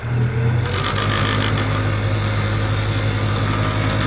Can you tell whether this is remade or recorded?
recorded